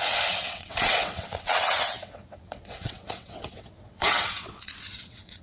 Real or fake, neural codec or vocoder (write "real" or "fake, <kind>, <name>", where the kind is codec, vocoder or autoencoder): fake, vocoder, WaveNeXt